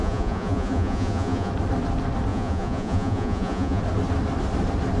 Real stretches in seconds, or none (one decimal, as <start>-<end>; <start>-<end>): 1.5-2.3; 3.8-5.0

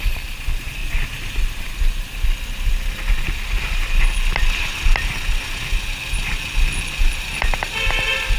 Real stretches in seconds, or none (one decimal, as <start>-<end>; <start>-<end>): 0.8-5.8